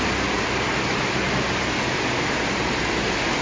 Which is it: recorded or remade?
recorded